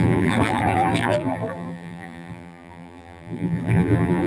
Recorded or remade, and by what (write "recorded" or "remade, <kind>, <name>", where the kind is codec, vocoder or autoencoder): remade, vocoder, BigVGAN v2